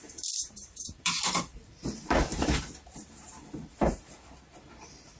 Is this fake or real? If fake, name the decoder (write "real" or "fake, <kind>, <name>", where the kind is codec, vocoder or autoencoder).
fake, vocoder, BigVGAN v2